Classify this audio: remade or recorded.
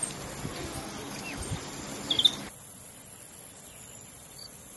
recorded